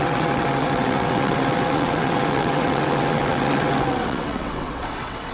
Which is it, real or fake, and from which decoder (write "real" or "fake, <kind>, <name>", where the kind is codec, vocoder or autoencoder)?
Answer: fake, vocoder, WaveNeXt